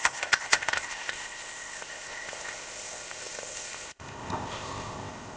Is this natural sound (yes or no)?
no